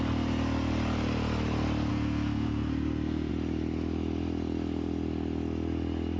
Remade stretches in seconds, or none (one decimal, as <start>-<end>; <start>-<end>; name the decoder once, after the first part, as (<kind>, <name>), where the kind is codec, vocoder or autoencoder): 1.9-3.3 (codec, SNAC)